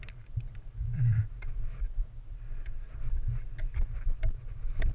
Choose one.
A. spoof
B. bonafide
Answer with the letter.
B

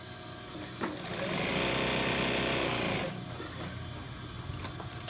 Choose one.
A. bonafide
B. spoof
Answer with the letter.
A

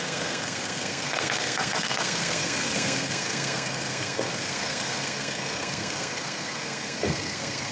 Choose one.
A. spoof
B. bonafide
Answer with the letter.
A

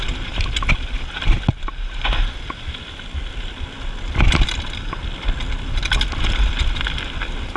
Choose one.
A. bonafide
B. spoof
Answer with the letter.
A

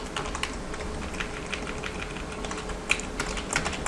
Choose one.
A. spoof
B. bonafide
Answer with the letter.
B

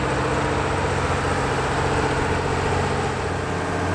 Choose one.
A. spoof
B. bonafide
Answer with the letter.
B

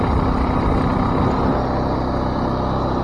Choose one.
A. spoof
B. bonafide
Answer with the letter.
B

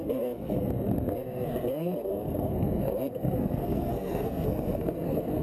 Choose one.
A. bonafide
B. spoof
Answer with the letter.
B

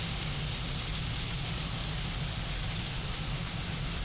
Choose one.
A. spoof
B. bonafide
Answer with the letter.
B